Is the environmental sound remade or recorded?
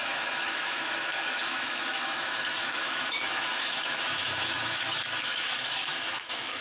remade